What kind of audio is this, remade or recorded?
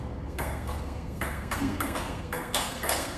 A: remade